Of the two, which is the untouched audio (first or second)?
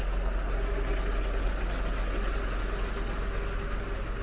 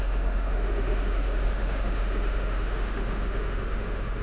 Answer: first